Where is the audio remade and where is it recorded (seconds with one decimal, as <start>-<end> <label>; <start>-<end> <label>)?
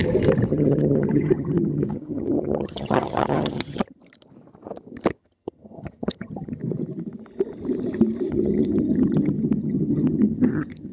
0.0-0.5 recorded; 0.5-4.0 remade; 4.0-5.1 recorded; 5.1-6.6 remade; 6.6-8.3 recorded; 8.3-10.9 remade